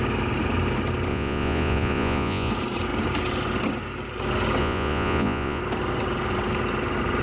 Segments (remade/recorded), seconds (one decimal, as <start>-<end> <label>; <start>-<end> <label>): 0.0-1.1 recorded; 1.1-2.5 remade; 2.5-4.6 recorded; 4.6-5.6 remade; 5.6-7.2 recorded